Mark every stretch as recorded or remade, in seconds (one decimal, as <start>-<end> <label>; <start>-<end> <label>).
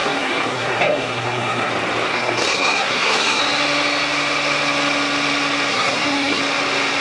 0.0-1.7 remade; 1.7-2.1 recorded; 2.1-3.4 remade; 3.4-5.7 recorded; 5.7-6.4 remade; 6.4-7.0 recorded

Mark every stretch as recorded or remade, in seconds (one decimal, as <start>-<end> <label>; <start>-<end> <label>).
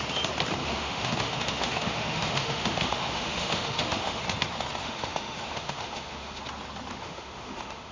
0.0-0.6 recorded; 0.6-4.2 remade; 4.2-4.8 recorded; 4.8-6.4 remade; 6.4-6.9 recorded; 6.9-7.9 remade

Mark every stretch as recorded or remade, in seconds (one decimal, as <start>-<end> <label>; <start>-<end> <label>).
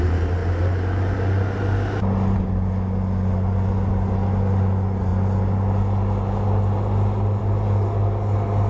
0.0-8.7 recorded